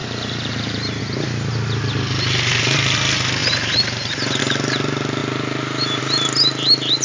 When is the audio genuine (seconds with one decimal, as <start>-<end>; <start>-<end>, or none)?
1.0-3.4; 4.4-7.0